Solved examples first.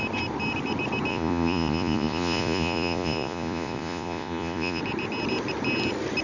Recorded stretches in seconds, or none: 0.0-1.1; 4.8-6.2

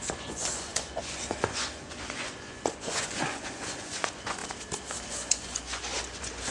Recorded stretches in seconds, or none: 4.4-5.1

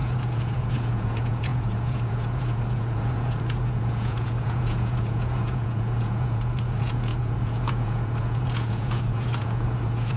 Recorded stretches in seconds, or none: none

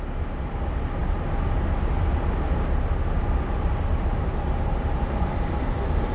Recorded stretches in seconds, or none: 0.0-6.1

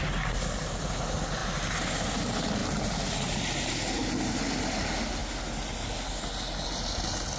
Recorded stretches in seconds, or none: 0.0-7.4